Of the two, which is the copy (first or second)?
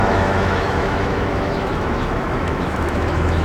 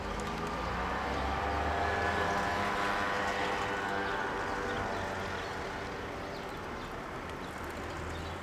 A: first